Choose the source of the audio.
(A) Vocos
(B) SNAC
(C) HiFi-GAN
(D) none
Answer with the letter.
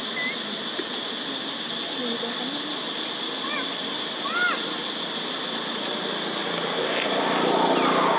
D